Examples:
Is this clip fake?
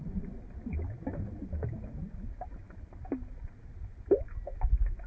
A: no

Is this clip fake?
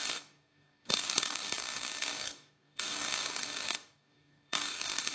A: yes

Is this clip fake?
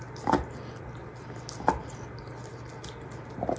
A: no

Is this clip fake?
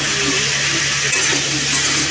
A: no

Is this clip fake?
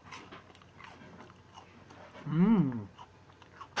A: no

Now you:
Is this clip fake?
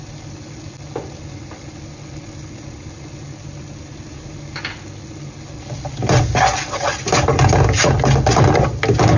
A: no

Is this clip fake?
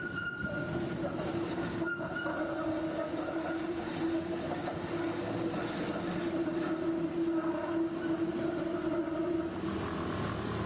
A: no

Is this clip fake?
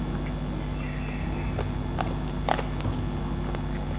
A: no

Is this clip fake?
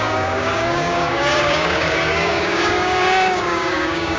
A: yes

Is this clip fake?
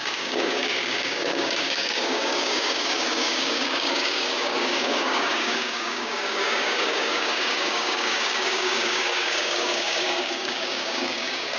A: yes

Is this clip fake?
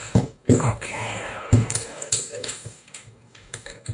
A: yes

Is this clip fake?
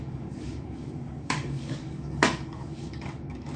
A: yes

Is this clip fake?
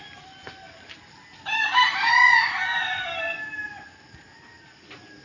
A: no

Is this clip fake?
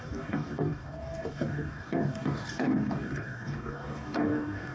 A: yes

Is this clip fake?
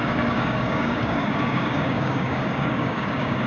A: yes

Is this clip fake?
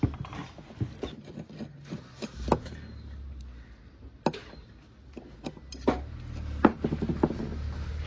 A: no